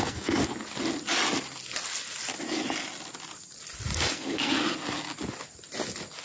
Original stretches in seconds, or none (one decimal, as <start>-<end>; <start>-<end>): 0.4-4.1; 4.6-6.2